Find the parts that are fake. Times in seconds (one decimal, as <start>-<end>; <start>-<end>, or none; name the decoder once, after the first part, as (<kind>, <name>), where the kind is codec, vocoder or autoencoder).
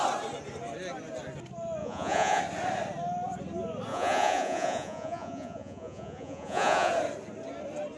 1.8-2.4 (vocoder, Vocos); 3.9-6.9